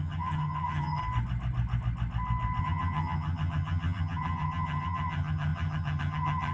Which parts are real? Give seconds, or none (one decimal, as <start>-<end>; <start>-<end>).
1.0-2.6